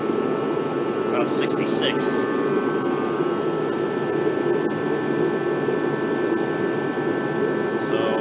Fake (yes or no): no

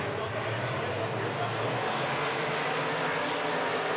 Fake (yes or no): no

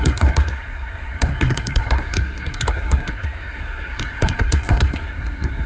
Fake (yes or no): yes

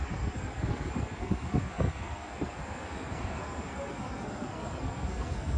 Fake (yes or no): yes